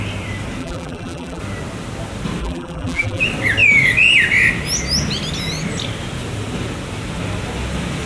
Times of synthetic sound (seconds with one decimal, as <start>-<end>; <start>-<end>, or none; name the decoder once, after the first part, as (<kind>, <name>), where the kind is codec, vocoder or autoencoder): 0.6-1.4 (vocoder, BigVGAN v2); 2.4-3.2